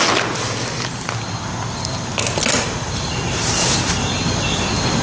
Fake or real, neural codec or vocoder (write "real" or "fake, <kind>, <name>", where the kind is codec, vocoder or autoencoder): real